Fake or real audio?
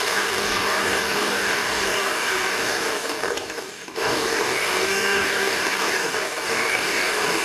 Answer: fake